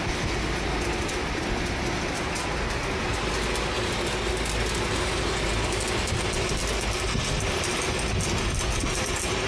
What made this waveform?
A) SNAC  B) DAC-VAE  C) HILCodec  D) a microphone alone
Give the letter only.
D